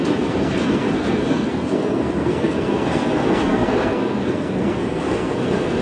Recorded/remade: remade